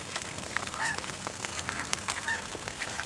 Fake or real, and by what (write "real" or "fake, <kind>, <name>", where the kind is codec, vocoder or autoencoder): fake, codec, SNAC